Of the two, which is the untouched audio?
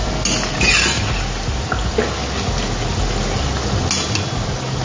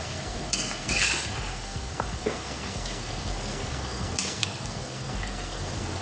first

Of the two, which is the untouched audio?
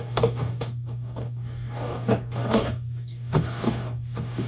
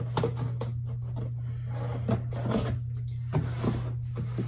second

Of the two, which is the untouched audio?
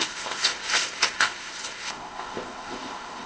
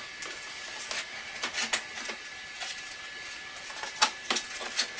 second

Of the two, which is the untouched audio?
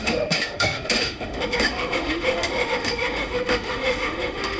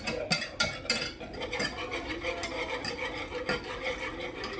second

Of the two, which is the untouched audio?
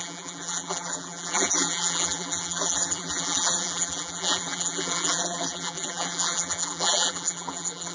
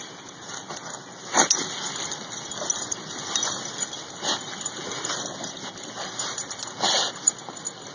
second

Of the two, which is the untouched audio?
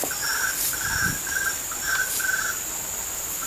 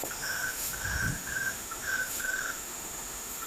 first